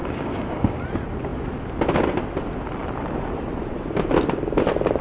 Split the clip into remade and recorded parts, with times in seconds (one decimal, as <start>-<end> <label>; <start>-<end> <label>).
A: 0.0-0.8 remade; 0.8-5.0 recorded